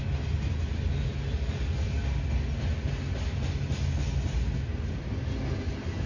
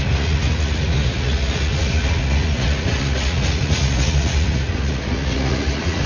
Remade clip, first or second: second